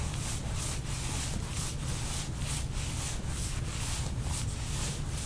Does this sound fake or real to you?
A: real